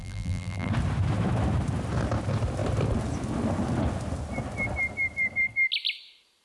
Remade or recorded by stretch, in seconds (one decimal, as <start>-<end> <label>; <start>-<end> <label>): 0.0-0.7 remade; 0.7-6.4 recorded